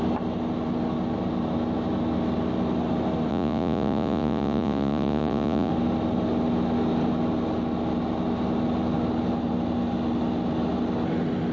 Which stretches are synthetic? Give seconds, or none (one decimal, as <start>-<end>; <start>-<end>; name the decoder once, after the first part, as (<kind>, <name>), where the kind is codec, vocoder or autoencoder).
3.3-5.7 (vocoder, Vocos)